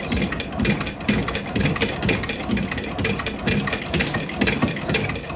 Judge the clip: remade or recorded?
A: recorded